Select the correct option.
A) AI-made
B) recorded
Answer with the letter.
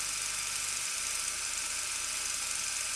A